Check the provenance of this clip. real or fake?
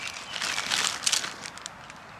real